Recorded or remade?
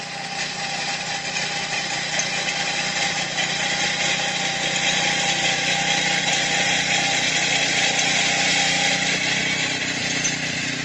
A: recorded